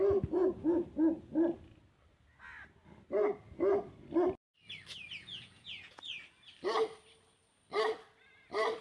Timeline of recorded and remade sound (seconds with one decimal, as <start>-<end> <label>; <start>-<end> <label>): 0.0-5.2 recorded; 5.2-6.0 remade; 6.0-8.8 recorded